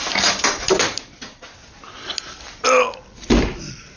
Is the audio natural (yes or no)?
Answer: yes